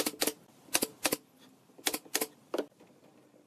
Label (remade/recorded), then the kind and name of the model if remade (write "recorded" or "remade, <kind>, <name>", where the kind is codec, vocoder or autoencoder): recorded